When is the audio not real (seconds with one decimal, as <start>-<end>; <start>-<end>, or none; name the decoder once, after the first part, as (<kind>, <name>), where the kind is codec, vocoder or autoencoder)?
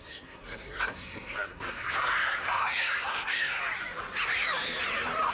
0.0-3.6 (codec, SNAC)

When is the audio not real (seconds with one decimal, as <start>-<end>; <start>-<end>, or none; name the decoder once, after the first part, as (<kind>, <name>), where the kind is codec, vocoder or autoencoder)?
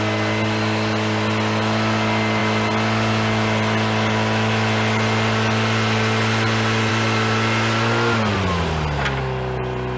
none